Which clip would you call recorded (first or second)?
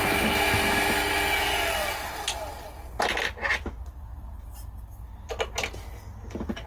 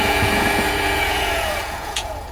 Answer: first